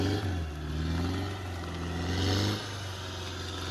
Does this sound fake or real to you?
real